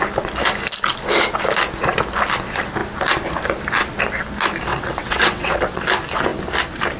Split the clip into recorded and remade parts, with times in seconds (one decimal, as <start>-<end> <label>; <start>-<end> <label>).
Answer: 0.0-4.7 recorded; 4.7-5.8 remade; 5.8-7.0 recorded